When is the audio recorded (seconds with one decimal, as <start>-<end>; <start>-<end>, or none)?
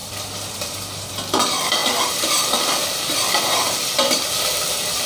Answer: none